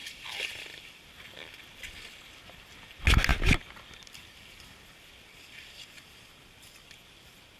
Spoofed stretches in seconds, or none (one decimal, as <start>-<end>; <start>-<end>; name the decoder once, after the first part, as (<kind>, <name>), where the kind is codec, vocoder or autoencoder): none